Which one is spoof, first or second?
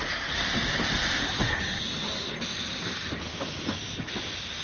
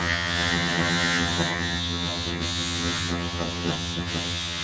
second